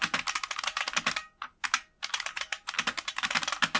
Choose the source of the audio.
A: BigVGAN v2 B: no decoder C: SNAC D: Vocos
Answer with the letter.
B